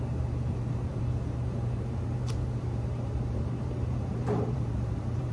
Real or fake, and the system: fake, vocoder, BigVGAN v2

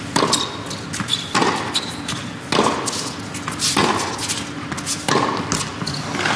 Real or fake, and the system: real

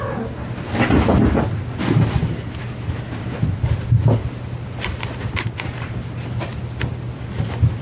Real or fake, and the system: real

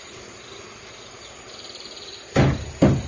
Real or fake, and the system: real